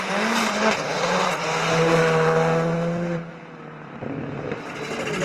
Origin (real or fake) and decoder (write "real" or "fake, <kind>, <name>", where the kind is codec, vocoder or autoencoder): real